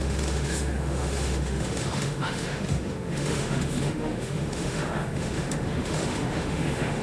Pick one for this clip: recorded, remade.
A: remade